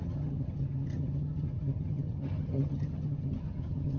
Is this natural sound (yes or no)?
no